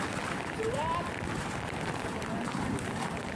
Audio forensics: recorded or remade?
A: recorded